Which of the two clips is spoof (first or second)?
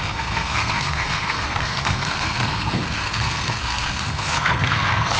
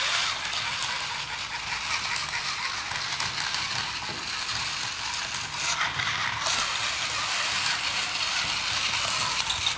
first